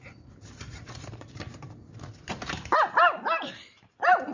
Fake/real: fake